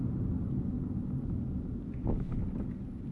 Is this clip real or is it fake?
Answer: real